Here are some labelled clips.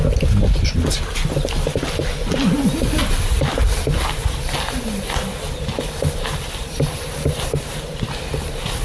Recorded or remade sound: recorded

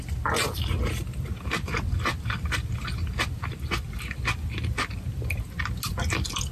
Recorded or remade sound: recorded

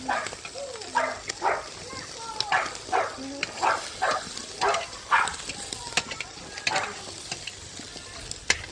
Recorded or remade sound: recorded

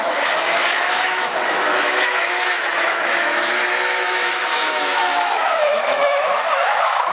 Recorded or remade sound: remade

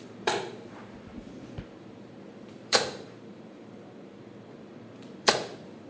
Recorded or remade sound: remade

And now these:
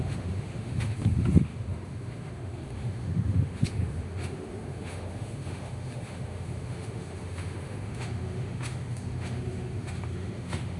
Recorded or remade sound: remade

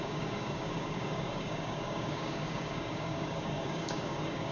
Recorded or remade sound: remade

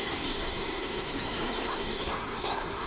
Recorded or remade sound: remade